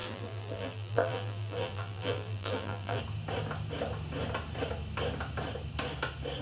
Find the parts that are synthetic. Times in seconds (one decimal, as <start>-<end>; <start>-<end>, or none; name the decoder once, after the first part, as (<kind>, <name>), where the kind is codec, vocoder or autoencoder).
0.0-3.0 (vocoder, BigVGAN v2)